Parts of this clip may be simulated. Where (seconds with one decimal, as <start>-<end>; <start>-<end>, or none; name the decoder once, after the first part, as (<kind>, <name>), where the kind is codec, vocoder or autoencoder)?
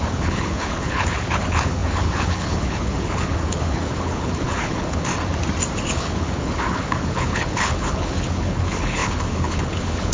0.0-5.1 (codec, HILCodec); 5.9-10.1